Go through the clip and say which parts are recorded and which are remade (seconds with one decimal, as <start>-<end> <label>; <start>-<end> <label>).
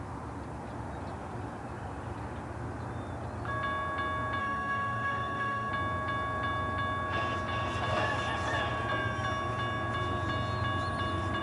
0.0-4.4 recorded; 4.4-5.7 remade; 5.7-11.4 recorded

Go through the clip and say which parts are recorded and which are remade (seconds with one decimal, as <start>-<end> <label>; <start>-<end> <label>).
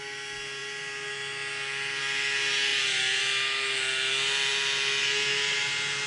0.0-6.1 recorded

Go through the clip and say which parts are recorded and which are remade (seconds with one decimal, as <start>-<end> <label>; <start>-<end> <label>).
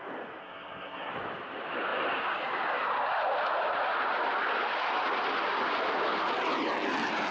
0.0-0.4 recorded; 0.4-1.1 remade; 1.1-7.3 recorded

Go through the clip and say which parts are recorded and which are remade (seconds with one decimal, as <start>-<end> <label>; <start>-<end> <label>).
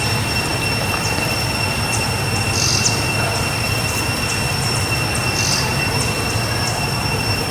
0.0-7.5 recorded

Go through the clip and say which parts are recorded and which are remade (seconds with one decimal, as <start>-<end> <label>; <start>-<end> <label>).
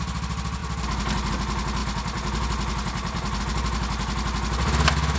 0.0-5.2 recorded